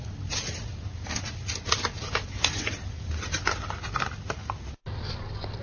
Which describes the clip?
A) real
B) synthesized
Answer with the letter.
A